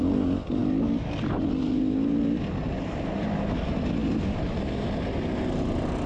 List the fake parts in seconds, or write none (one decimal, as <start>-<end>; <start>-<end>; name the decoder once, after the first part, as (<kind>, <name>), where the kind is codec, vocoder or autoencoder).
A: none